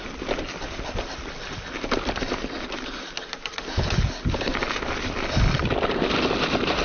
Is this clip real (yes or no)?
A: yes